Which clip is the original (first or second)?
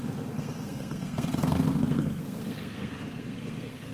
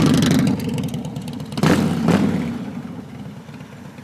second